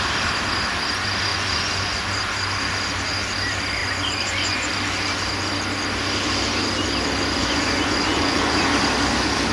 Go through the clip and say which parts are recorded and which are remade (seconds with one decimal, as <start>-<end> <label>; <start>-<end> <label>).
0.0-1.3 recorded; 1.3-2.0 remade; 2.0-3.8 recorded; 3.8-4.7 remade; 4.7-7.4 recorded; 7.4-8.7 remade; 8.7-9.5 recorded